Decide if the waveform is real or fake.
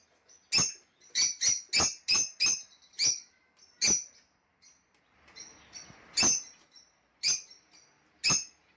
real